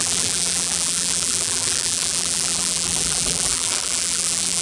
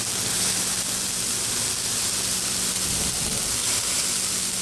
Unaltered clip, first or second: second